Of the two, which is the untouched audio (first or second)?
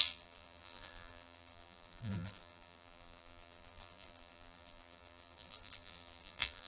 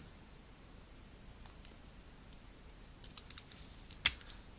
second